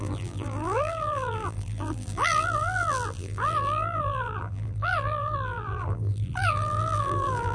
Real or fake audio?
fake